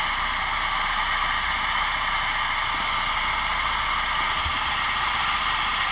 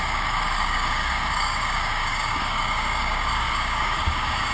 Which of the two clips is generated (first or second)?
second